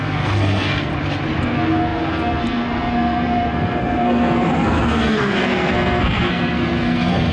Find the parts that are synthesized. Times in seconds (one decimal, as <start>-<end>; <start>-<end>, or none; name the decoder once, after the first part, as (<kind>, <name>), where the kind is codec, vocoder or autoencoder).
0.0-0.9 (codec, SNAC); 1.4-7.3